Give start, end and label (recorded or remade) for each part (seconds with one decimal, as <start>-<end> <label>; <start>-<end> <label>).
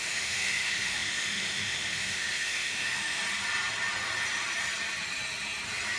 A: 0.0-3.2 remade; 3.2-6.0 recorded